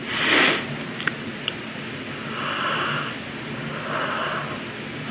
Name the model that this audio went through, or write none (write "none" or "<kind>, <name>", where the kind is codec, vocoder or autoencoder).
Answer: none